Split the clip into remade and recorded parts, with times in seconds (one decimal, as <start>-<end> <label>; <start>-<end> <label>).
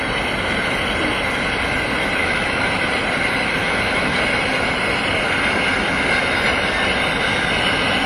0.0-2.2 recorded; 2.2-2.9 remade; 2.9-3.6 recorded; 3.6-4.2 remade; 4.2-8.1 recorded